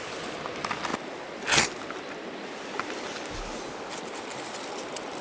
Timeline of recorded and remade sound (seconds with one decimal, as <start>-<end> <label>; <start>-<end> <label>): 0.0-5.2 recorded